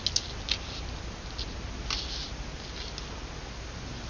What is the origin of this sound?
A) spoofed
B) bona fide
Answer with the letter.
B